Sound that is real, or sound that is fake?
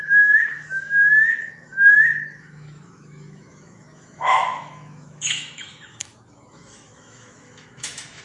fake